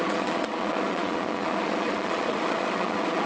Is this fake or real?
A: fake